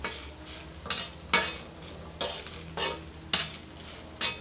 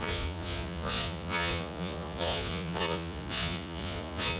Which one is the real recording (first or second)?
first